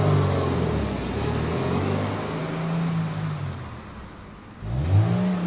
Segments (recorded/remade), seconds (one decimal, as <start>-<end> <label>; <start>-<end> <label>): 0.0-5.5 recorded